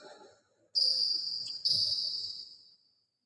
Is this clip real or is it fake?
real